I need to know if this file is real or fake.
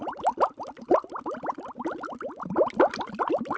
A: real